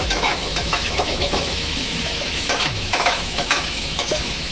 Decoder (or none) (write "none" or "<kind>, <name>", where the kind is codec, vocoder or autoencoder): autoencoder, DAC-VAE